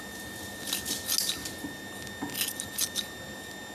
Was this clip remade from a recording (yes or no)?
no